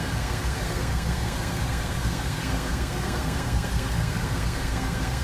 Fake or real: fake